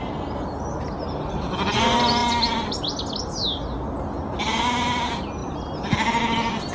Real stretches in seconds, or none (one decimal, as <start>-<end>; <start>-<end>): 0.0-6.7